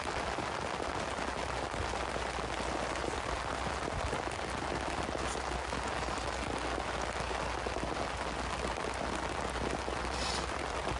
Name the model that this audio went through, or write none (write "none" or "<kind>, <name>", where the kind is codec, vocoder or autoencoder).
none